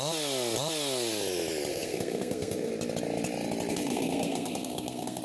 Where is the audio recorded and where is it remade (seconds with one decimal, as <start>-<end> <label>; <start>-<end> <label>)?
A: 0.0-1.7 recorded; 1.7-2.7 remade; 2.7-3.7 recorded; 3.7-5.2 remade